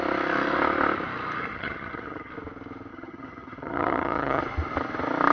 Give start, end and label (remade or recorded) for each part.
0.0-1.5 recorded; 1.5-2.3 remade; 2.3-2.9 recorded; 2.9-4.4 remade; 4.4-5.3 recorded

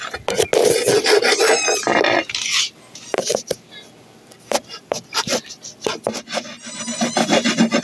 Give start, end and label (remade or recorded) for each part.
0.0-1.9 recorded; 1.9-5.5 remade; 5.5-7.8 recorded

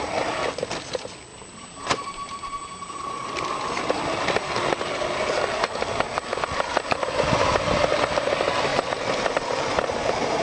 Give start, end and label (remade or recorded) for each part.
0.0-1.3 recorded; 1.3-3.5 remade; 3.5-8.7 recorded; 8.7-10.4 remade

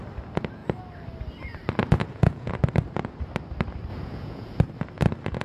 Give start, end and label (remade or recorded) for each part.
0.0-2.0 recorded; 2.0-2.5 remade; 2.5-3.9 recorded; 3.9-4.6 remade; 4.6-5.4 recorded

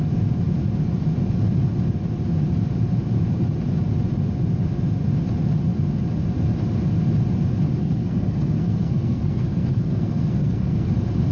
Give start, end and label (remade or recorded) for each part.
0.0-7.8 recorded; 7.8-10.9 remade; 10.9-11.3 recorded

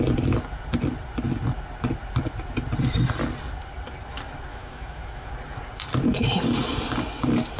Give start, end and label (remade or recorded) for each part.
0.0-4.5 recorded; 4.5-5.3 remade; 5.3-7.6 recorded